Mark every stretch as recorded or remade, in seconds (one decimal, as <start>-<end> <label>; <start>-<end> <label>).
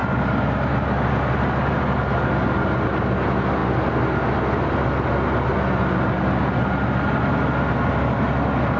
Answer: 0.0-8.8 recorded